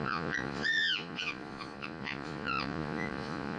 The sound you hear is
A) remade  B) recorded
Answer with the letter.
A